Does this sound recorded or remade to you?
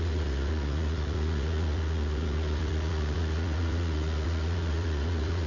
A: remade